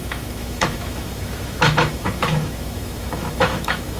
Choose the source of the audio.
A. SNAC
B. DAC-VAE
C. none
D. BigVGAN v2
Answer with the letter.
B